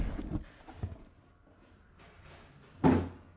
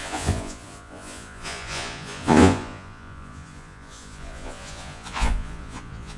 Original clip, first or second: first